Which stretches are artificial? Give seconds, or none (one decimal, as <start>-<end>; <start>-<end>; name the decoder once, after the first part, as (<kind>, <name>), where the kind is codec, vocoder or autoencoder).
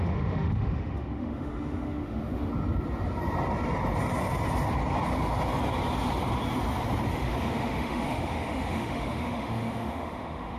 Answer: 0.0-2.5 (autoencoder, DAC-VAE); 7.1-10.6